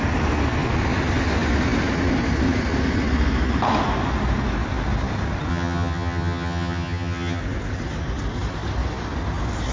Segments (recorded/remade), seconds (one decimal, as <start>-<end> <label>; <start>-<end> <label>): 0.0-5.5 recorded; 5.5-7.4 remade; 7.4-9.7 recorded